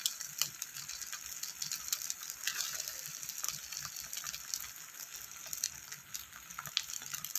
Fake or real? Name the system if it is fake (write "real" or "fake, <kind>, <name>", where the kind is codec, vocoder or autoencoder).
real